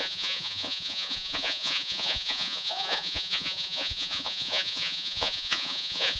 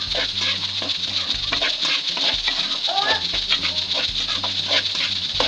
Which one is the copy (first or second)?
first